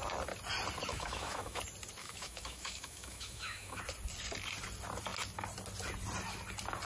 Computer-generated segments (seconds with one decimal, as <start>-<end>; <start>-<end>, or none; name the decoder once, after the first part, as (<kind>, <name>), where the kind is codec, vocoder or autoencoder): 0.9-1.6 (autoencoder, DAC-VAE); 2.0-3.8